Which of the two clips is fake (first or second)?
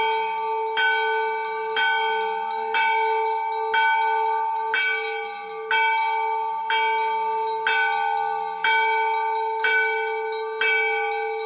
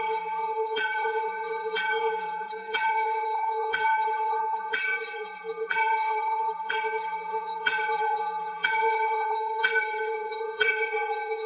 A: second